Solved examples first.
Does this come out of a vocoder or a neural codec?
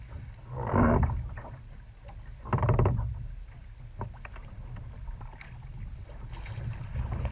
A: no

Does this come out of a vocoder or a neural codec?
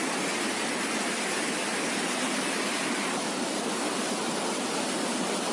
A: no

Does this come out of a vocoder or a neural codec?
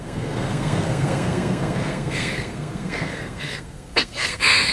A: yes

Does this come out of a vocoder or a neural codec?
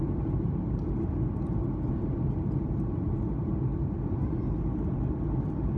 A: no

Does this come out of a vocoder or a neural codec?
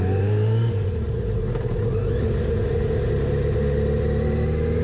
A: no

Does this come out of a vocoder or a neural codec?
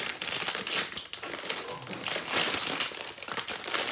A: no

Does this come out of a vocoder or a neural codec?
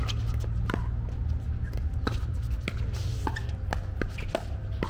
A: no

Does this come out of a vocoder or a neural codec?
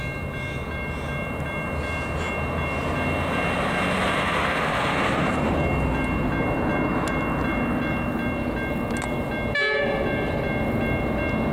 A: no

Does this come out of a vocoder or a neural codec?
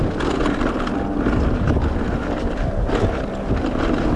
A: no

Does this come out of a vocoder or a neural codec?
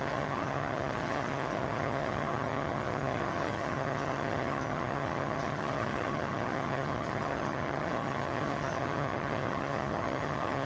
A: yes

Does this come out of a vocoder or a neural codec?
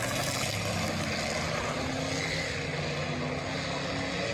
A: no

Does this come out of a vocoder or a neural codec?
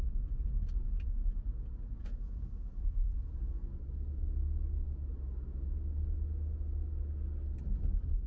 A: no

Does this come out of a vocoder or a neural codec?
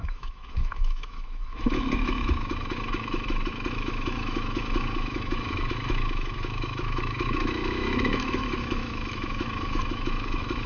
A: yes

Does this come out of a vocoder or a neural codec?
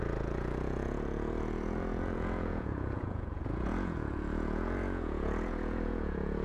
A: yes